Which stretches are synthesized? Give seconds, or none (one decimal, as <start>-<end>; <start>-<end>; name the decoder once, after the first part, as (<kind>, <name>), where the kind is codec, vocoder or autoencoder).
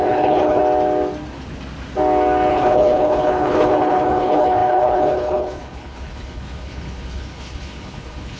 0.0-0.6 (codec, HILCodec); 2.5-8.4